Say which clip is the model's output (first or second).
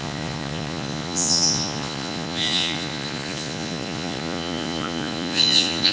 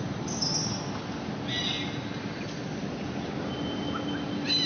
first